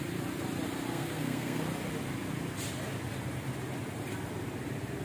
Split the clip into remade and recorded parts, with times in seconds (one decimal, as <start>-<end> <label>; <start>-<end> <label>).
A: 0.0-0.9 recorded; 0.9-1.6 remade; 1.6-5.0 recorded